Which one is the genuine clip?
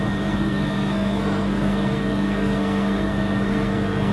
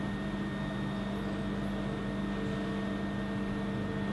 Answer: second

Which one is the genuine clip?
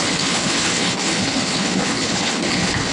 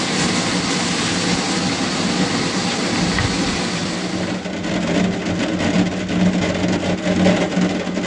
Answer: second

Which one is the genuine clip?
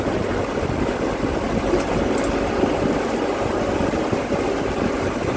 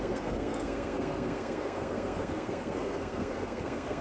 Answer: first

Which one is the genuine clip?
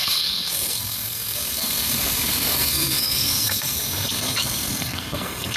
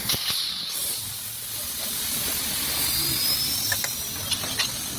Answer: second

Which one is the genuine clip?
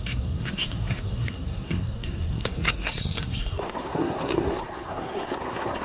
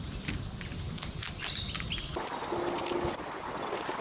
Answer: second